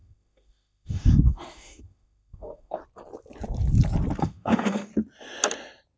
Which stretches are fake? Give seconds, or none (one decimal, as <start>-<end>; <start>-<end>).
0.0-2.8; 4.2-4.9